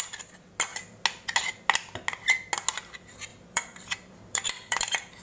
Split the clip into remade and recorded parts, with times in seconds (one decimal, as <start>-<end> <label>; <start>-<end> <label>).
0.0-3.3 recorded; 3.3-4.8 remade; 4.8-5.2 recorded